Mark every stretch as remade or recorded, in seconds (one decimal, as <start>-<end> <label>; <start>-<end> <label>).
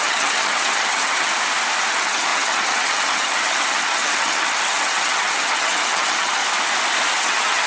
0.0-1.3 remade; 1.3-1.9 recorded; 1.9-6.4 remade; 6.4-7.2 recorded; 7.2-7.7 remade